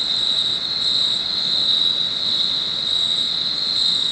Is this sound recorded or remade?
remade